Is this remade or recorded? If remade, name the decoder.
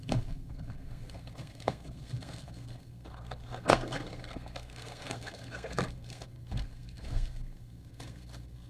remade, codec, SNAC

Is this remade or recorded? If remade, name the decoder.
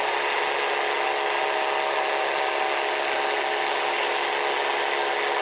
recorded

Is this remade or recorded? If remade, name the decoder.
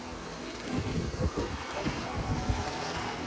remade, codec, SNAC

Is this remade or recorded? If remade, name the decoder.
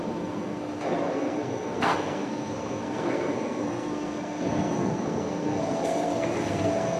remade, codec, SNAC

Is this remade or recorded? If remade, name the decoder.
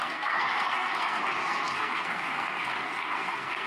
remade, codec, SNAC